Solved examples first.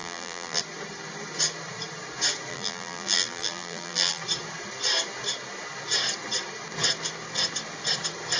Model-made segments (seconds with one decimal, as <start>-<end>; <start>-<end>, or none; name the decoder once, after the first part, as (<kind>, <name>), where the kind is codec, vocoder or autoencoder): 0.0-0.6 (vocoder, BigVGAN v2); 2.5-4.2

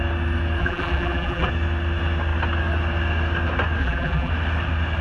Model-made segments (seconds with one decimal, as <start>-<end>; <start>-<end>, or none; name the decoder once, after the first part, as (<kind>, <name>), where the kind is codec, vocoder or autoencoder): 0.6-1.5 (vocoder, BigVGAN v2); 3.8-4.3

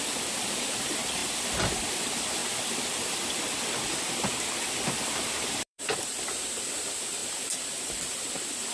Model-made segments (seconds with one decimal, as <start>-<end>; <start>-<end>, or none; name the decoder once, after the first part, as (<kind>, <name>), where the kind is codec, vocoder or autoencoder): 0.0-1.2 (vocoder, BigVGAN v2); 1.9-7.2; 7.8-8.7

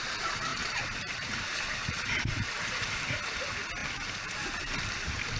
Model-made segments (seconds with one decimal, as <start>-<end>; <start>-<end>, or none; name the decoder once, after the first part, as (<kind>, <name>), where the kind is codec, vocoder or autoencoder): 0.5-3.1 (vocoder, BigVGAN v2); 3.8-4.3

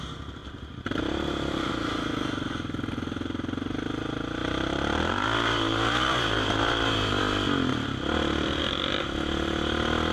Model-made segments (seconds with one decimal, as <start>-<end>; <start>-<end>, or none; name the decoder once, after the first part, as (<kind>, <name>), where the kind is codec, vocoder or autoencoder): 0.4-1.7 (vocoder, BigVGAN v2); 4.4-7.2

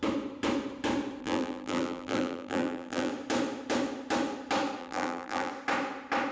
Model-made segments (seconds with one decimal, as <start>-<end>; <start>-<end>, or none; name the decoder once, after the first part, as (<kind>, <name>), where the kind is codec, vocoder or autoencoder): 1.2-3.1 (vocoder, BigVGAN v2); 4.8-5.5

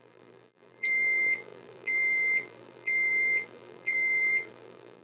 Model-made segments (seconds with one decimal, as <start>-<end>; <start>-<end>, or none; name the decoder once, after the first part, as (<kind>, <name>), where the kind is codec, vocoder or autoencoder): 0.0-5.0 (vocoder, BigVGAN v2)

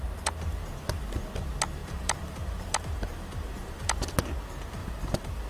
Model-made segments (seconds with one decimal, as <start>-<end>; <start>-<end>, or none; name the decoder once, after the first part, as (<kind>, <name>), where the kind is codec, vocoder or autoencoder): 1.8-4.1 (vocoder, BigVGAN v2); 4.8-5.5